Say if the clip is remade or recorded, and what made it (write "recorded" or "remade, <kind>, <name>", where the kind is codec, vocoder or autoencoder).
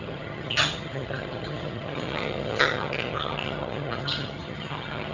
remade, vocoder, HiFi-GAN